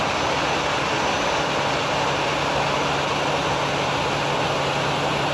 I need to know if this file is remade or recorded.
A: recorded